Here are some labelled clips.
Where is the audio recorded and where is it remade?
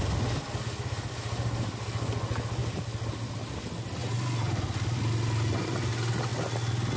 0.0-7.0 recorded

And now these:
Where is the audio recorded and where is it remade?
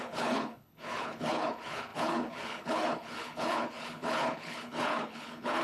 0.0-5.6 remade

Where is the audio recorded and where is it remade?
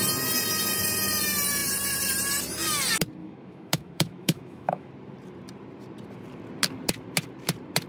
0.0-3.2 recorded; 3.2-4.9 remade; 4.9-7.9 recorded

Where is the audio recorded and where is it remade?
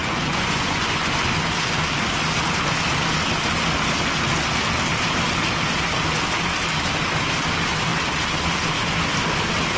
0.0-1.1 remade; 1.1-9.8 recorded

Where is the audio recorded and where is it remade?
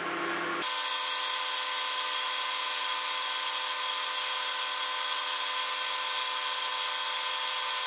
0.0-7.9 recorded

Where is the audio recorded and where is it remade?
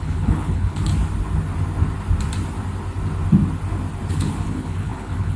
0.0-0.9 remade; 0.9-4.1 recorded; 4.1-5.4 remade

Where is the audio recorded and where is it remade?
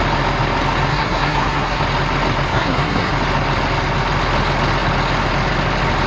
0.0-0.9 recorded; 0.9-1.8 remade; 1.8-2.5 recorded; 2.5-3.1 remade; 3.1-6.1 recorded